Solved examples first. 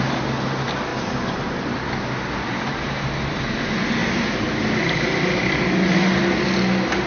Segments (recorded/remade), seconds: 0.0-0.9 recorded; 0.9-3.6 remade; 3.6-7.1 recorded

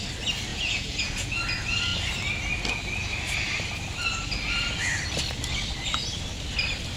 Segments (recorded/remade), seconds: 0.0-0.5 recorded; 0.5-1.4 remade; 1.4-7.0 recorded